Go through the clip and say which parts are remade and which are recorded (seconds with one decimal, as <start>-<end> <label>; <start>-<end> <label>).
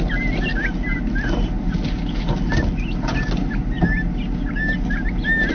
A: 0.0-5.5 recorded